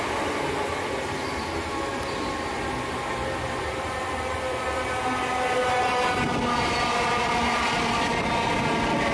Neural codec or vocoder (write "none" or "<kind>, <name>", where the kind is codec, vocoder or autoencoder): none